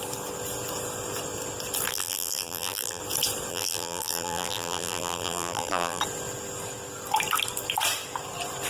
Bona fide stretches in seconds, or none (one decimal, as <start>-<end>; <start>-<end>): 0.0-1.9; 3.0-3.5; 6.0-8.7